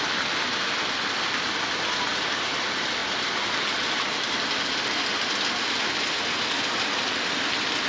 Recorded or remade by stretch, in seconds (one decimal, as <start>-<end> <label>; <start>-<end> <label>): 0.0-7.9 recorded